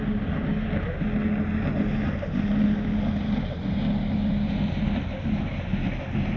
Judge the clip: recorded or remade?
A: recorded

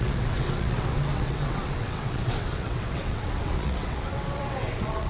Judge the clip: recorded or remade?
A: remade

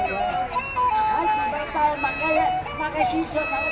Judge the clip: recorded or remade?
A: recorded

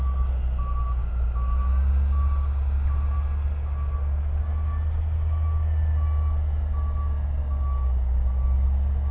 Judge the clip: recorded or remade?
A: recorded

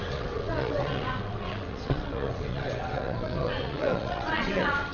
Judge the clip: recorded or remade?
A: remade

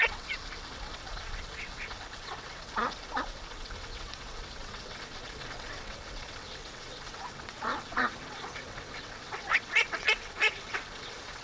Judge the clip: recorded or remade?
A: remade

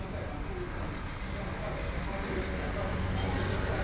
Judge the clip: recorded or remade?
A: recorded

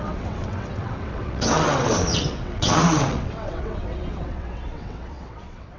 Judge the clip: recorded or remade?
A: remade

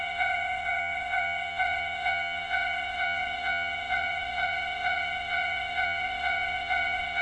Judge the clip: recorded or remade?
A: remade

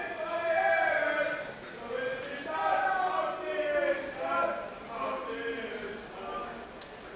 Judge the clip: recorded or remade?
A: recorded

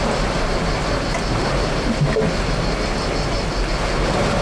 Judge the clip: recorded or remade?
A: recorded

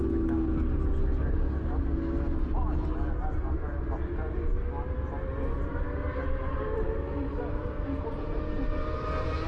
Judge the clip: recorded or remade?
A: recorded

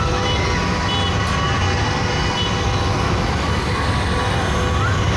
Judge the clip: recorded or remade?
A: recorded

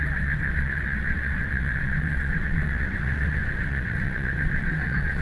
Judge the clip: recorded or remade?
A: remade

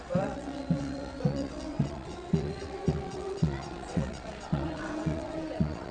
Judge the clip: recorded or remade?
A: remade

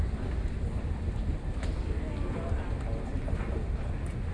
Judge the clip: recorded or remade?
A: recorded